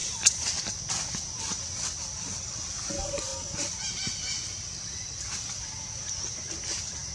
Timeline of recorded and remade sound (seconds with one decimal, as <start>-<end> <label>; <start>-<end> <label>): 0.0-7.1 recorded